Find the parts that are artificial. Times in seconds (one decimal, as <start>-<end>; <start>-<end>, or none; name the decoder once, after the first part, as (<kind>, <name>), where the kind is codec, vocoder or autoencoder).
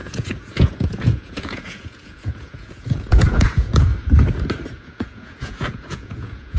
0.0-3.9 (vocoder, Vocos); 4.7-6.6